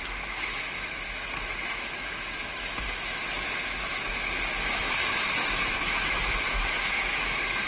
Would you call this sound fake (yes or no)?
yes